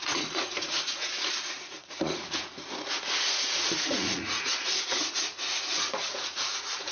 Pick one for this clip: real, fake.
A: fake